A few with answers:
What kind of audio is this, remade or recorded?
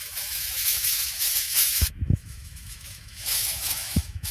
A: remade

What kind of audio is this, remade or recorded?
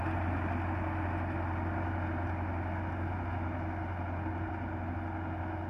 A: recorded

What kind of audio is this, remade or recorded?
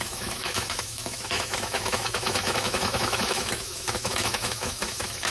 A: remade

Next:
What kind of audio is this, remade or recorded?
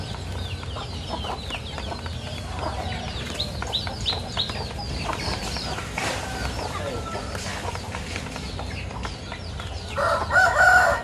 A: recorded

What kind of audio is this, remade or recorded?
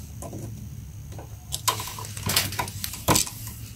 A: recorded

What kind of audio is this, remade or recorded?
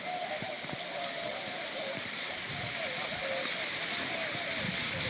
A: recorded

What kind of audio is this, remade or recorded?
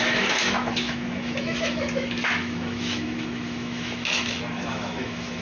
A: remade